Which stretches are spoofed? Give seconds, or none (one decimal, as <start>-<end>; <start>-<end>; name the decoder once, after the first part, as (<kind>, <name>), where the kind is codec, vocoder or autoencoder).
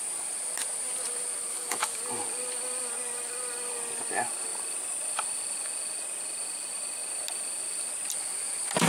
1.5-2.0 (autoencoder, DAC-VAE)